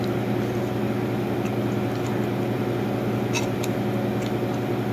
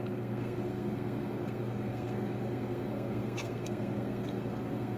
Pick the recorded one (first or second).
first